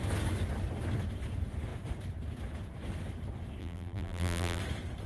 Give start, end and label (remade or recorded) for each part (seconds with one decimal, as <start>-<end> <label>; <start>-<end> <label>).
0.0-3.6 recorded; 3.6-4.6 remade; 4.6-5.1 recorded